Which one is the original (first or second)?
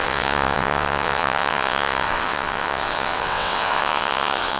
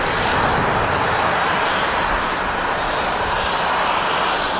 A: second